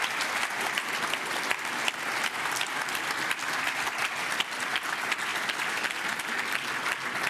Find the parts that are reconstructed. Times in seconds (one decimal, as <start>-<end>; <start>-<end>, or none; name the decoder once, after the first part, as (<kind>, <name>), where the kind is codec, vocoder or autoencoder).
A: none